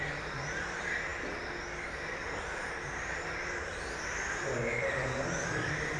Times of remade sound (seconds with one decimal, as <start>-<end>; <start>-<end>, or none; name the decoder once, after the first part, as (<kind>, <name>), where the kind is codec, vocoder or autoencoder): none